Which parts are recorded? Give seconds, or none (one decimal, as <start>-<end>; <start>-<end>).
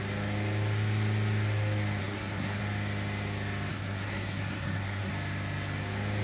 0.0-2.0; 2.6-3.7; 5.1-6.2